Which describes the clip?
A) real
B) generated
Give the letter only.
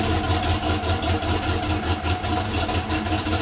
A